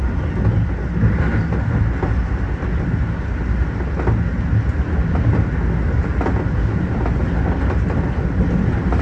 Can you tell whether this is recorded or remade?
recorded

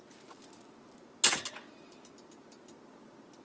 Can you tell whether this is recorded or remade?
recorded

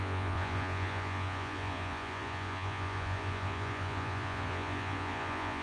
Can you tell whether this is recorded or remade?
remade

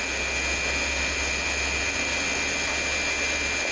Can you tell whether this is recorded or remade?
recorded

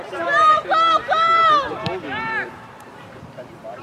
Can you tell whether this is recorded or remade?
remade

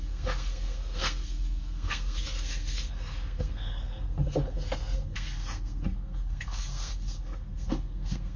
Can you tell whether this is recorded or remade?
remade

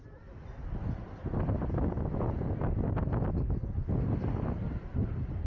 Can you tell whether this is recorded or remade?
recorded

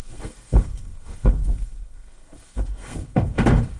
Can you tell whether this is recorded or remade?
remade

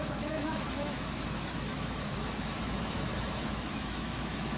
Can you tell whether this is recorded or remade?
remade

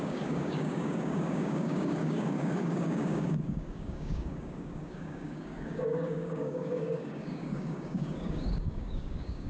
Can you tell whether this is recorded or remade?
remade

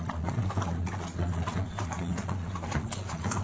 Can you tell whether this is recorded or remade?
remade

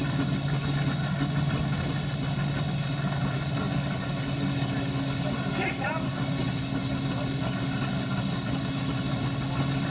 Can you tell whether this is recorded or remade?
recorded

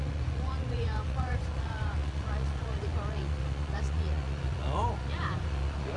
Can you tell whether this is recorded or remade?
remade